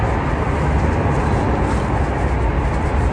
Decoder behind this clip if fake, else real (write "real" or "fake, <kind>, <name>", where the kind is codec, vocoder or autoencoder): real